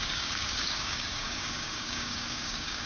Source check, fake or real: fake